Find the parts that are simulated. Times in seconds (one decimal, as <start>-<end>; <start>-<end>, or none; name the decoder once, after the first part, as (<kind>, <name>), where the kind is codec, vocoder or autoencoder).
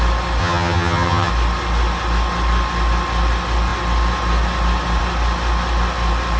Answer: 0.4-1.3 (vocoder, HiFi-GAN)